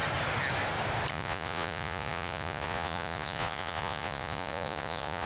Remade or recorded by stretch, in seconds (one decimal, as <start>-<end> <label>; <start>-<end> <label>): 0.0-1.1 recorded; 1.1-5.3 remade